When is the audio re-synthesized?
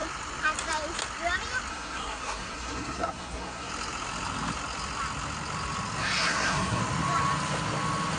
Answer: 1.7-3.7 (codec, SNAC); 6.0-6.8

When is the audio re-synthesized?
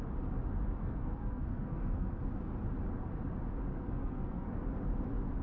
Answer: 0.8-2.2 (codec, SNAC); 3.7-4.6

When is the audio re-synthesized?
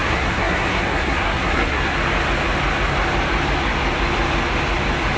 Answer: 0.0-1.9 (codec, SNAC)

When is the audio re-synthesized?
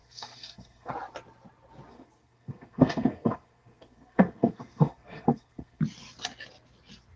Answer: 0.0-0.9 (codec, SNAC); 1.9-5.8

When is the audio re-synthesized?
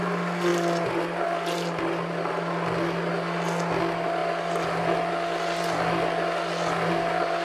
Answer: none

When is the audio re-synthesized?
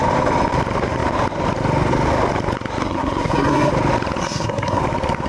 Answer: 2.8-3.7 (codec, SNAC); 4.2-4.8